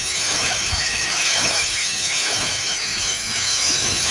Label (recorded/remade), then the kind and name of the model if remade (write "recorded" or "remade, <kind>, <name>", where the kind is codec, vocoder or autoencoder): remade, autoencoder, DAC-VAE